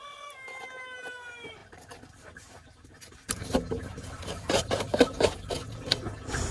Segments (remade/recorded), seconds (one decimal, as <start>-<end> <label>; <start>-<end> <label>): 0.0-1.6 recorded; 1.6-4.7 remade; 4.7-6.5 recorded